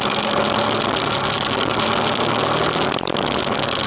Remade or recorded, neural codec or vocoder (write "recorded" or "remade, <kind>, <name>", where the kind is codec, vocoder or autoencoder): recorded